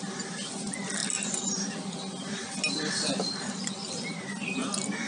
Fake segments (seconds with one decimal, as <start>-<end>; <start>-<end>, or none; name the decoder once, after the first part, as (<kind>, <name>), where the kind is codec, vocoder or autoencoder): none